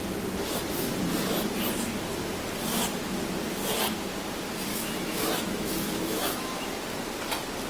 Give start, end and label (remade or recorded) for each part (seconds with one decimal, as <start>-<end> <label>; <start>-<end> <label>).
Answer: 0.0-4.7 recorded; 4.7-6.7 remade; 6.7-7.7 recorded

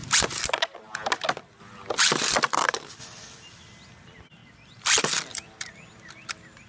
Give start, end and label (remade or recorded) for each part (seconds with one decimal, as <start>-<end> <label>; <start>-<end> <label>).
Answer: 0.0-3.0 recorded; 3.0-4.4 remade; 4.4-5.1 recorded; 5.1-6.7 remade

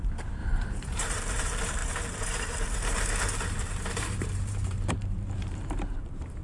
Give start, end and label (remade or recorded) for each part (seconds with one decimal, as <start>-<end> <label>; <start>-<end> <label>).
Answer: 0.0-6.4 remade

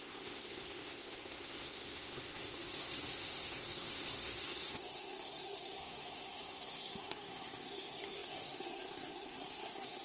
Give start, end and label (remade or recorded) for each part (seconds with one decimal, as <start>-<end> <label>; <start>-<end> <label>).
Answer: 0.0-10.0 remade

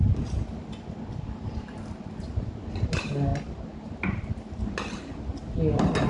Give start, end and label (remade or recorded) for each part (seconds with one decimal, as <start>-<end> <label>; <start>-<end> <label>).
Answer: 0.0-6.1 recorded

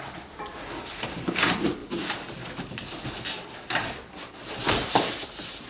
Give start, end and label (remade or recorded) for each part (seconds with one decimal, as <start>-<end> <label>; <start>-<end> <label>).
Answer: 0.0-5.7 recorded